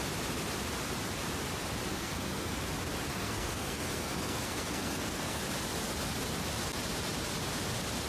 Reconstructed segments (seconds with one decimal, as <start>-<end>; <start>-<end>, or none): 1.9-2.6; 3.1-5.4